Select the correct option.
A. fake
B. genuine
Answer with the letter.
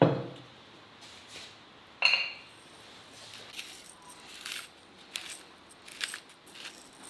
B